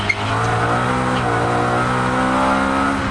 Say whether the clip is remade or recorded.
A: recorded